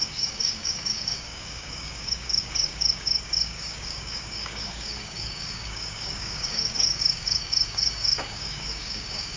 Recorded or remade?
remade